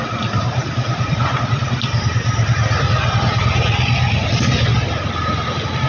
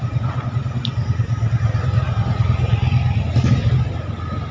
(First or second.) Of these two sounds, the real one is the second